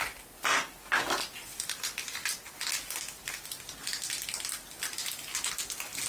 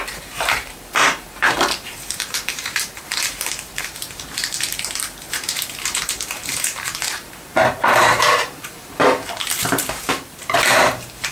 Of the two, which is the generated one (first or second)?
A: second